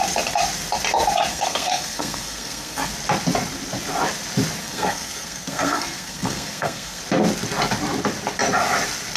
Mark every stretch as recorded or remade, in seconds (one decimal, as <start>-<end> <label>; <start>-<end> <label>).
0.0-1.3 recorded; 1.3-2.9 remade; 2.9-4.6 recorded; 4.6-7.0 remade; 7.0-9.2 recorded